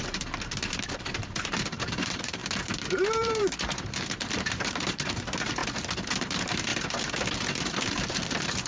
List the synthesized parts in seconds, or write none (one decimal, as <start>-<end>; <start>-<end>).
0.0-2.4; 3.2-5.6; 6.2-6.7; 7.9-8.7